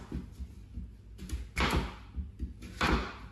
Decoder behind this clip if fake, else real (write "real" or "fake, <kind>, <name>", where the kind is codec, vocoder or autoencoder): real